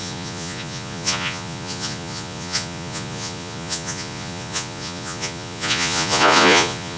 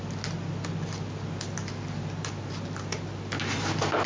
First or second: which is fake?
first